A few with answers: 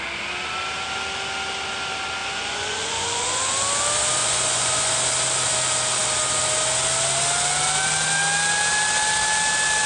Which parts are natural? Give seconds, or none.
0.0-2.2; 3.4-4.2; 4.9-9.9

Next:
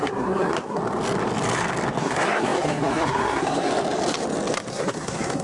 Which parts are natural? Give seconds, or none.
0.8-2.0; 3.7-4.7

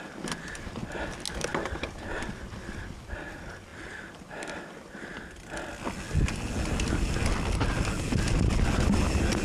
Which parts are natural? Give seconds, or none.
0.0-1.5; 2.8-9.4

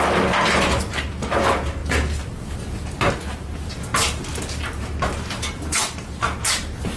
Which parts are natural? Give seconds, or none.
0.0-7.0